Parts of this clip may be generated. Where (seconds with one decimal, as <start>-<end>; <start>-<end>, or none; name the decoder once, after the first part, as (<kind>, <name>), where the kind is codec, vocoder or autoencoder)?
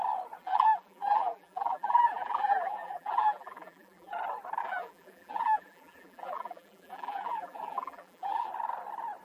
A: 0.4-4.1 (vocoder, BigVGAN v2); 4.6-8.5